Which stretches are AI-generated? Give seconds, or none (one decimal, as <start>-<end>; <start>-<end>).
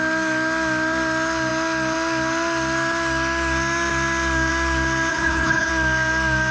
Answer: 5.1-5.7